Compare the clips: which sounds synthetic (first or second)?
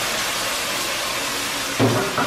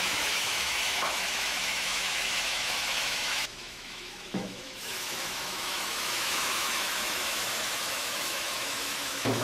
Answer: second